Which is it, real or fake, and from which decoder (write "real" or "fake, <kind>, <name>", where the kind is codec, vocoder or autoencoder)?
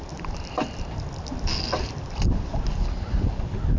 real